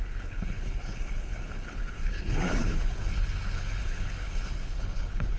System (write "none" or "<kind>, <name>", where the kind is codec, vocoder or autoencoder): codec, HILCodec